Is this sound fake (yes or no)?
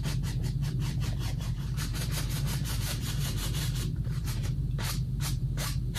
yes